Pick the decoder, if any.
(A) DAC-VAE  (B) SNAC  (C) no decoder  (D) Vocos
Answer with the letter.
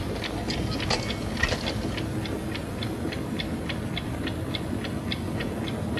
C